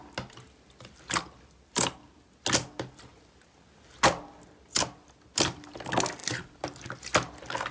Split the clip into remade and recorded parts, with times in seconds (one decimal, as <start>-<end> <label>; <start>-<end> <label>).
0.0-7.7 recorded